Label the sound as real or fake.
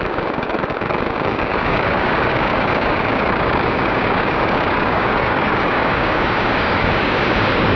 fake